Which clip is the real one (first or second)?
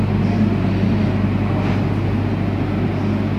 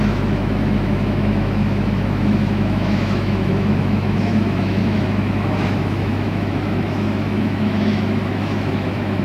first